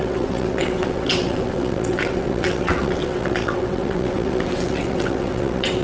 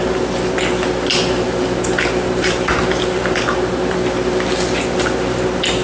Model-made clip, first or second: first